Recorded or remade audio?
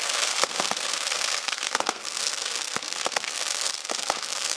remade